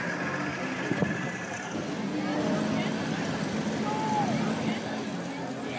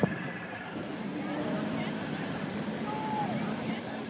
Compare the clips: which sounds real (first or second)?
first